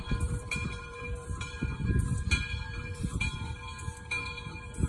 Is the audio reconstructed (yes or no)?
yes